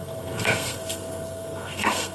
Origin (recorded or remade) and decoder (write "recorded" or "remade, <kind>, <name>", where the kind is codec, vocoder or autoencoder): remade, codec, SNAC